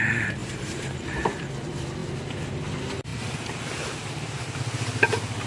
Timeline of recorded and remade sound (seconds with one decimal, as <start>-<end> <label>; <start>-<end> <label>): 0.0-0.4 recorded; 0.4-1.5 remade; 1.5-3.1 recorded; 3.1-4.6 remade; 4.6-5.5 recorded